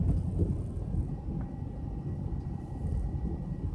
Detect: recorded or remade recorded